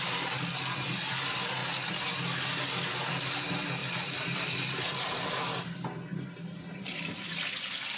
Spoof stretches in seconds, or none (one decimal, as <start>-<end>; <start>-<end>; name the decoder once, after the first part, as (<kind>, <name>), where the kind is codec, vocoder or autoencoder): 3.8-5.6 (vocoder, BigVGAN v2)